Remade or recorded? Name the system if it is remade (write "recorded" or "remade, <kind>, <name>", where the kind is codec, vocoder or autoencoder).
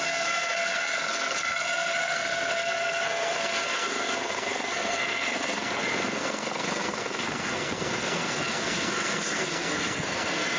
remade, codec, SNAC